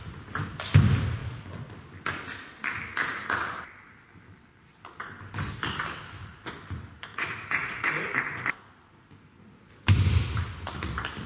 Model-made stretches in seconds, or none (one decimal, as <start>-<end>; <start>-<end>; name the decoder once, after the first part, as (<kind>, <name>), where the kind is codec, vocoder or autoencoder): 7.1-8.1 (vocoder, Vocos)